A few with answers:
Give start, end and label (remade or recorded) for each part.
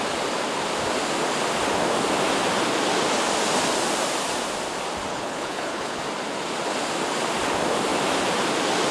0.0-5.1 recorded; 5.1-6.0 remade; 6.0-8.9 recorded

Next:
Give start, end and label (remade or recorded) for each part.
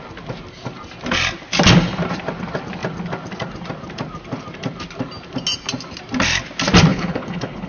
0.0-6.9 recorded; 6.9-7.7 remade